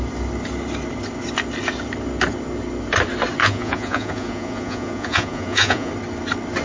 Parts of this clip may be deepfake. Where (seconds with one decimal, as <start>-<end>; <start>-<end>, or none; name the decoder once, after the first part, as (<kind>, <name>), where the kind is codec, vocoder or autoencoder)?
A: 3.4-5.9 (vocoder, Vocos)